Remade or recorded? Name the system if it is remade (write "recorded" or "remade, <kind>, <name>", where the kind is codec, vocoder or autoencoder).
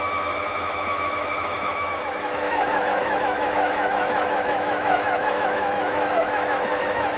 remade, autoencoder, DAC-VAE